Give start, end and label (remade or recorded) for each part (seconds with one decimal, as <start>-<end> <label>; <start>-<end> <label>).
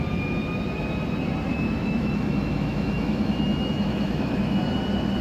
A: 0.0-1.5 recorded; 1.5-4.6 remade; 4.6-5.2 recorded